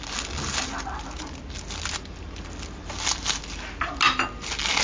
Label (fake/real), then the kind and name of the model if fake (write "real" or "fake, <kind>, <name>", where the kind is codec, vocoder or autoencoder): real